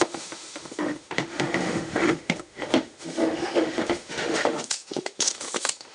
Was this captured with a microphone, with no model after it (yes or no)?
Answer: no